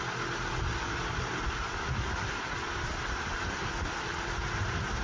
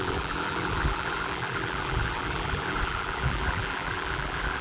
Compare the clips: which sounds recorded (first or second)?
first